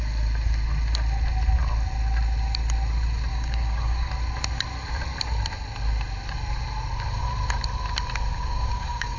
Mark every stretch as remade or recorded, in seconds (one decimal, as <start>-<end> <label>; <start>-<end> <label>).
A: 0.0-3.3 recorded; 3.3-4.1 remade; 4.1-8.3 recorded; 8.3-9.2 remade